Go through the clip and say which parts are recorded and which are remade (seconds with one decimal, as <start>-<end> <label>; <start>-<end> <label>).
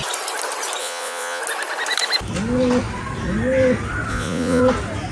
0.0-0.8 recorded; 0.8-1.4 remade; 1.4-4.1 recorded; 4.1-4.6 remade; 4.6-5.1 recorded